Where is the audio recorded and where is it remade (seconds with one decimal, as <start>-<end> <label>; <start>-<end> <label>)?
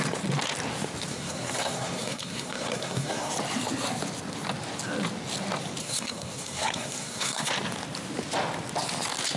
0.0-1.1 recorded; 1.1-3.3 remade; 3.3-5.8 recorded; 5.8-7.5 remade; 7.5-9.4 recorded